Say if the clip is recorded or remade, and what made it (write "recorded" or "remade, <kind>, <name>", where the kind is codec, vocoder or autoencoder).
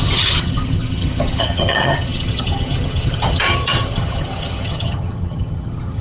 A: remade, vocoder, HiFi-GAN